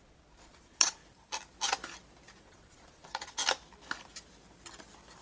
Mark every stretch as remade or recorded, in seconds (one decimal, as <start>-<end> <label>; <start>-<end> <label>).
0.0-1.0 remade; 1.0-2.4 recorded; 2.4-3.4 remade; 3.4-5.2 recorded